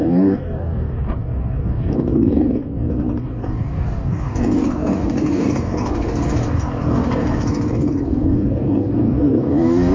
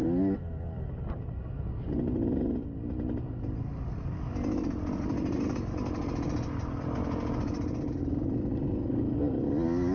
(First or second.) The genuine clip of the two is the second